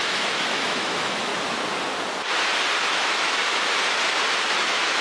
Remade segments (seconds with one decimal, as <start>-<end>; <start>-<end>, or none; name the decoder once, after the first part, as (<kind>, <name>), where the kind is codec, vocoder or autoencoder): 0.0-1.3 (autoencoder, DAC-VAE); 2.8-3.4; 4.6-5.0